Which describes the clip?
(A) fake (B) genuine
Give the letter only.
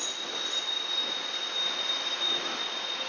B